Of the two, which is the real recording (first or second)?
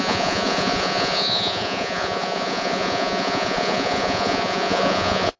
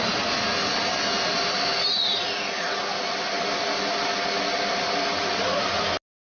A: second